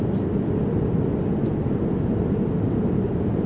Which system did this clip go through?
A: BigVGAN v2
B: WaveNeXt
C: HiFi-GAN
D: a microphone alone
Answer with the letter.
D